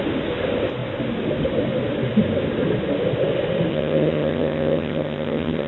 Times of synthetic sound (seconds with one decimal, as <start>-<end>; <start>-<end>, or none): 3.7-5.7